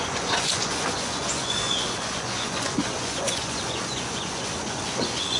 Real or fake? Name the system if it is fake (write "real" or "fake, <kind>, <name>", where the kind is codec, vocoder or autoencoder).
fake, vocoder, Vocos